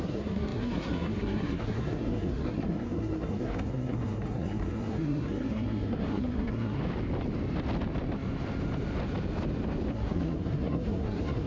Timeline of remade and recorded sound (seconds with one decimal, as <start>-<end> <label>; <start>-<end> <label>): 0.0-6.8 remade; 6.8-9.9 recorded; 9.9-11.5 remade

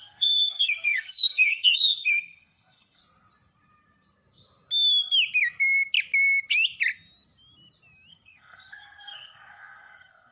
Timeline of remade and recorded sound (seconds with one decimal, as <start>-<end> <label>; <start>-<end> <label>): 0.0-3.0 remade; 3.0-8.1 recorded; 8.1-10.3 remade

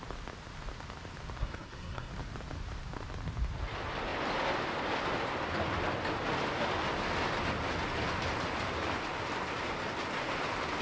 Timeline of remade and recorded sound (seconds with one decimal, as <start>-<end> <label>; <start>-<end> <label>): 0.0-1.4 recorded; 1.4-2.1 remade; 2.1-10.8 recorded

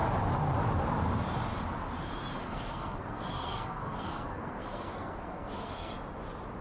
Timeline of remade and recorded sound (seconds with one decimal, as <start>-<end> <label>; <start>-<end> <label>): 0.0-2.4 recorded; 2.4-5.9 remade; 5.9-6.6 recorded